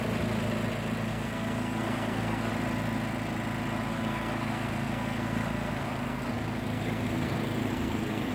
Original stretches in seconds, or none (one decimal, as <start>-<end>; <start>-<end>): 0.0-1.1; 2.5-3.9